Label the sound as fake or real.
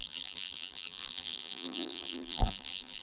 fake